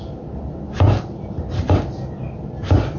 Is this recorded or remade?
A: recorded